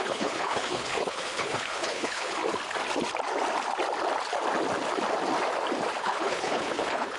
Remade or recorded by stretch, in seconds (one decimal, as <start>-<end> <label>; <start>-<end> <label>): 0.0-2.4 remade; 2.4-6.0 recorded; 6.0-7.2 remade